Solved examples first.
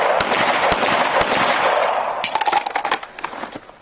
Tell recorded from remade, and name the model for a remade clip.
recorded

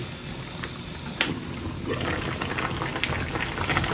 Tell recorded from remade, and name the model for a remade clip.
recorded